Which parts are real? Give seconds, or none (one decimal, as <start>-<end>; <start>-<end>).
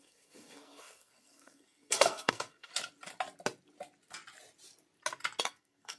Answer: 2.7-5.4